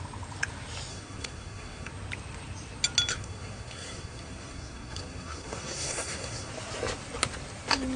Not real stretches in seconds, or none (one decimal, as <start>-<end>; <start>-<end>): 0.9-1.9; 3.1-6.5